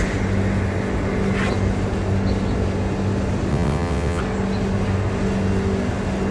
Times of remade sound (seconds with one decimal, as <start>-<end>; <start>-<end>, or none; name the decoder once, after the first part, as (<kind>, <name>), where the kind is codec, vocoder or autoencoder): 3.5-4.2 (vocoder, WaveNeXt)